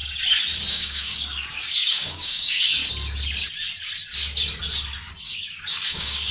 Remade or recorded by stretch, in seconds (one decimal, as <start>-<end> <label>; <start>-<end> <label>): 0.0-0.7 recorded; 0.7-2.8 remade; 2.8-5.1 recorded; 5.1-6.3 remade